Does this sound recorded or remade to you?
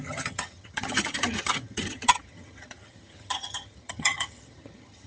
remade